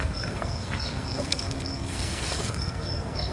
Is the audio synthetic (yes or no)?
yes